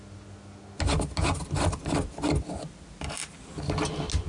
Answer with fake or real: real